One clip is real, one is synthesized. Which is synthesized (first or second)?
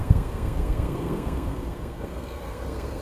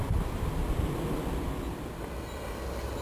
first